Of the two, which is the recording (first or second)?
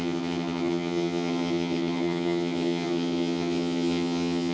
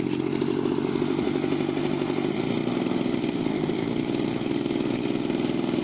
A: second